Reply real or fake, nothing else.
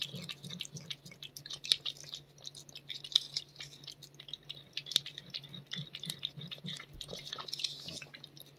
real